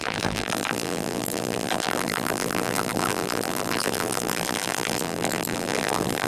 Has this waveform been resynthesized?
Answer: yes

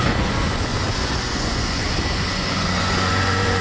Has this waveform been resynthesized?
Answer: yes